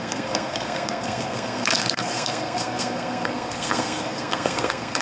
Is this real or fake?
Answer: fake